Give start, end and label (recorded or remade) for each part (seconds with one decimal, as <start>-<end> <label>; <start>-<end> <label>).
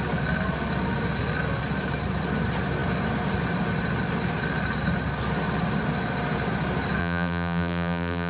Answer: 0.0-7.0 recorded; 7.0-8.3 remade